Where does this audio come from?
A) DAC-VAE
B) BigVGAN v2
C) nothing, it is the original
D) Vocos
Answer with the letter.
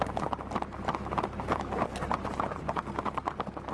C